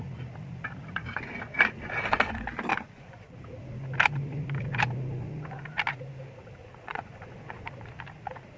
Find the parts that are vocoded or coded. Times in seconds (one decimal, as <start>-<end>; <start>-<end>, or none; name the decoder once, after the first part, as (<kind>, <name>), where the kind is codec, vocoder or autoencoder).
2.7-3.4 (vocoder, Vocos); 6.6-7.7